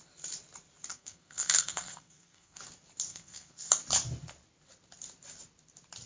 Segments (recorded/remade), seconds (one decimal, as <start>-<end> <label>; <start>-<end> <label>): 0.0-0.9 recorded; 0.9-2.6 remade; 2.6-3.1 recorded; 3.1-3.7 remade; 3.7-6.1 recorded